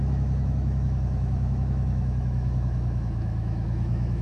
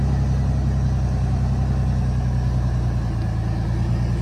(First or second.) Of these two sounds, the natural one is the second